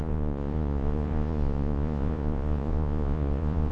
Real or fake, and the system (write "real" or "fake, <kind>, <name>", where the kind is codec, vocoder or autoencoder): fake, vocoder, Vocos